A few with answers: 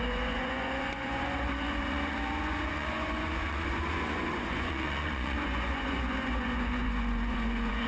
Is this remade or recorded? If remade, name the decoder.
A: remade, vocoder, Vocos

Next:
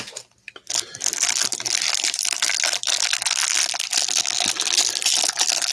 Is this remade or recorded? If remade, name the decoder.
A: recorded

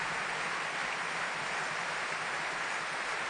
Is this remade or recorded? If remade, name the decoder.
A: remade, vocoder, BigVGAN v2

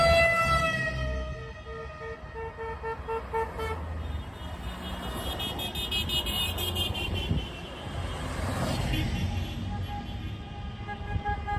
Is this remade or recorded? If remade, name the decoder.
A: recorded